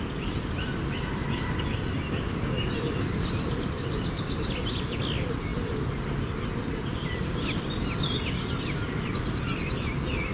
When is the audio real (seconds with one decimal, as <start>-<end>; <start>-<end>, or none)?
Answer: 0.0-10.3